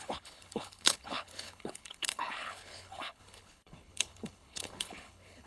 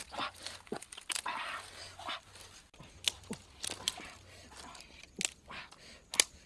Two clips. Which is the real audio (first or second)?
second